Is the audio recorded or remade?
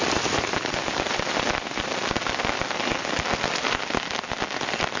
recorded